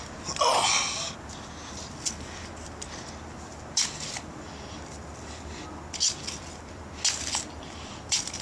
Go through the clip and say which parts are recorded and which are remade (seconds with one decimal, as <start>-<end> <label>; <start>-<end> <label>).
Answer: 0.0-8.4 recorded